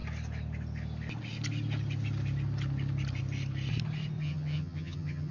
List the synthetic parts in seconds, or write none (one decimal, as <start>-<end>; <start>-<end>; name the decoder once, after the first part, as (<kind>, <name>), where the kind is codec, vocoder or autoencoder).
4.2-5.3 (vocoder, HiFi-GAN)